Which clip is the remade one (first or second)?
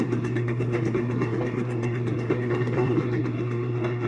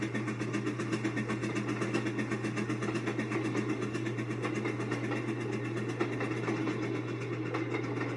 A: first